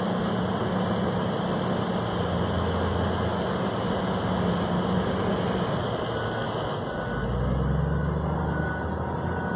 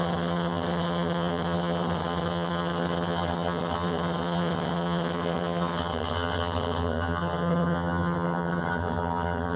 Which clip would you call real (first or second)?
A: first